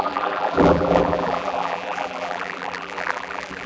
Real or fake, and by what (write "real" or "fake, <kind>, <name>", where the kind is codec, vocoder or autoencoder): fake, vocoder, BigVGAN v2